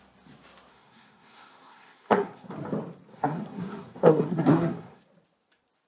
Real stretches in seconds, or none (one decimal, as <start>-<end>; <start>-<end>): 0.0-0.7; 2.5-3.1; 5.0-5.9